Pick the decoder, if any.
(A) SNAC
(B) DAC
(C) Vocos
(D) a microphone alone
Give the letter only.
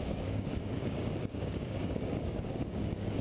B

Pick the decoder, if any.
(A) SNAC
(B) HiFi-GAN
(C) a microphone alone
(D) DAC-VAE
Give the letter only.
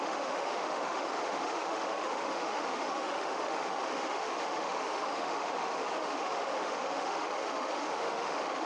D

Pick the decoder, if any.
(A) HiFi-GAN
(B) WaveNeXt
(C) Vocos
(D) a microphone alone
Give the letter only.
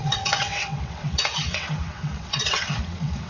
B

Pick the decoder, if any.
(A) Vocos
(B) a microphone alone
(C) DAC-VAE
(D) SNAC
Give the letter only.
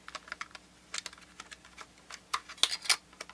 B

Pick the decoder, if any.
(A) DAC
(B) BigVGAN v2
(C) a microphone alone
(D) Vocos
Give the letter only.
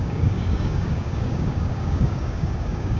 A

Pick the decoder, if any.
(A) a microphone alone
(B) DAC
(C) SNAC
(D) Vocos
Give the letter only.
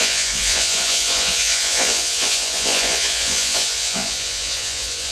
D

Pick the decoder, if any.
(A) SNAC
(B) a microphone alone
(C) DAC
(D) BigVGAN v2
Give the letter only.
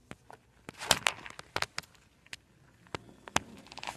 B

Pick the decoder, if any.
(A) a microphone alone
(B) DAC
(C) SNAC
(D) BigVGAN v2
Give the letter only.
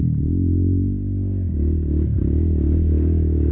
B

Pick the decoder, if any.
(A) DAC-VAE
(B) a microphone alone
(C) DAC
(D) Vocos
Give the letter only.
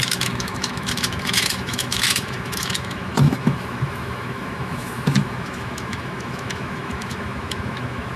A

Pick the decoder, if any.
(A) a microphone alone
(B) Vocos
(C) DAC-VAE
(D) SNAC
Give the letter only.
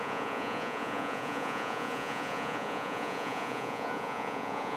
B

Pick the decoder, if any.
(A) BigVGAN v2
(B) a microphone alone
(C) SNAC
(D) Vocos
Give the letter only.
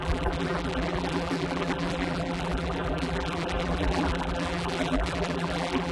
A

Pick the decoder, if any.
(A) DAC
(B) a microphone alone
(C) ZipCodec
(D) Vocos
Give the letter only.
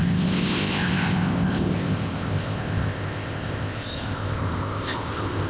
C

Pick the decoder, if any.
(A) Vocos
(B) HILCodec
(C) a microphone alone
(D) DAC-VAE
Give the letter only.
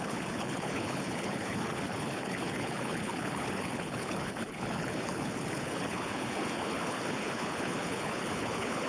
B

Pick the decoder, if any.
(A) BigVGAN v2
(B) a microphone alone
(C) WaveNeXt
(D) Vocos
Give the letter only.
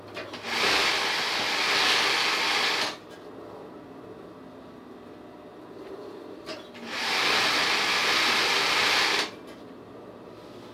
B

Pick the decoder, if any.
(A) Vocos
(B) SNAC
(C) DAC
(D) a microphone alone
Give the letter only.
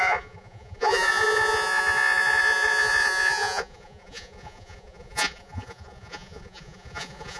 A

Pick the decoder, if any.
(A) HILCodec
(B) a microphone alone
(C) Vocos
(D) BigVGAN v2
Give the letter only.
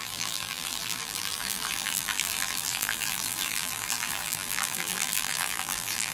D